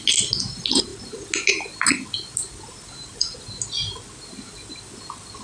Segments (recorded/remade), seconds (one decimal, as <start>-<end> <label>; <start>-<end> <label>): 0.0-5.4 recorded